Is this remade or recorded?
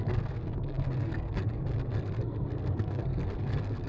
remade